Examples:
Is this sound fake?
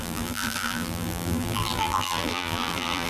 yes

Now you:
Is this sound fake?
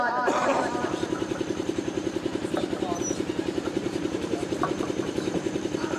yes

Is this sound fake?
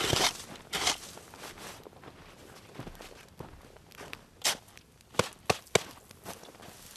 no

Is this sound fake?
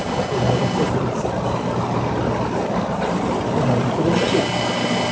yes